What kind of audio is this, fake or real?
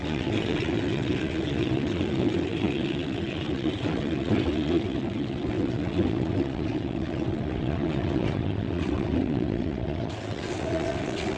fake